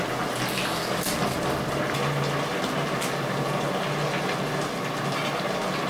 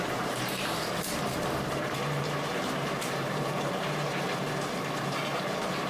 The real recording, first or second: first